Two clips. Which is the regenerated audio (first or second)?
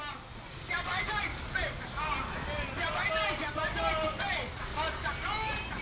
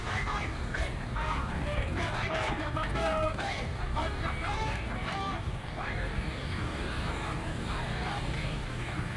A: second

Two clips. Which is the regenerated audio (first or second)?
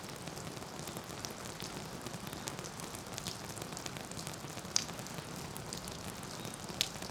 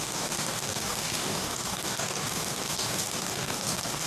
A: second